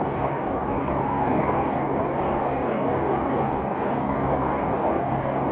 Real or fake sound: fake